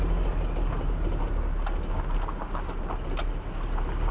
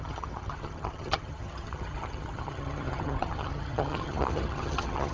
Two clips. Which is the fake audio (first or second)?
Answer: second